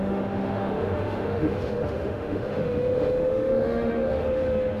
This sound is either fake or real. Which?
fake